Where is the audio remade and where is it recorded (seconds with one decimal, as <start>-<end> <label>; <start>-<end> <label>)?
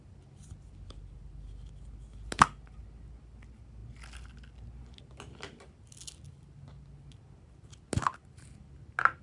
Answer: 0.0-9.2 recorded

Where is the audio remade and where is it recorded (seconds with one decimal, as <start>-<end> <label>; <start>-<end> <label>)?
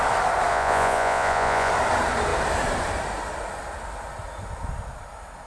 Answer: 0.0-0.5 recorded; 0.5-1.7 remade; 1.7-5.5 recorded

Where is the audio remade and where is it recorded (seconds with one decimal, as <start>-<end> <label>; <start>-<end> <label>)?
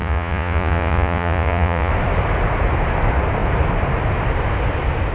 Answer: 0.0-1.9 remade; 1.9-5.1 recorded